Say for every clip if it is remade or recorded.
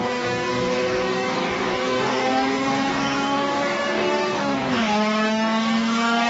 remade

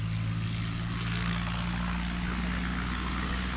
recorded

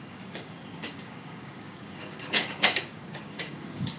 remade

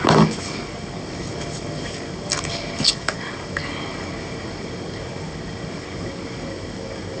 remade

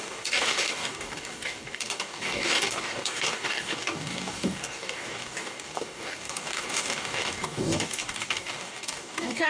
remade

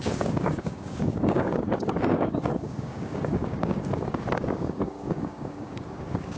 remade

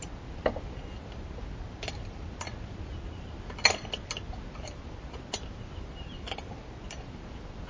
recorded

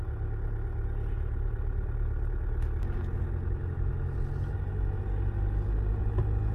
recorded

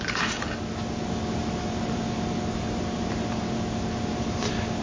recorded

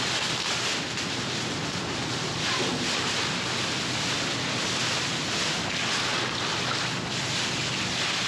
recorded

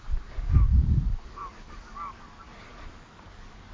remade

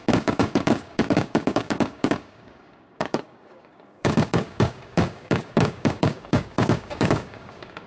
remade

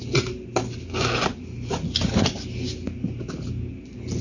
recorded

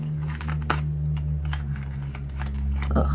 recorded